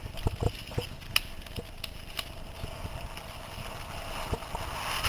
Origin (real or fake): real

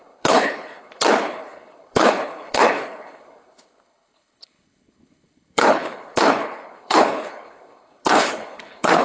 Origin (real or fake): fake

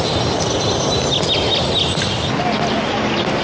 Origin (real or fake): real